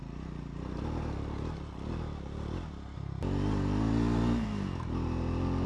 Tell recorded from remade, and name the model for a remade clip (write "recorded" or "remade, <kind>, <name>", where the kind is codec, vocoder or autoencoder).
recorded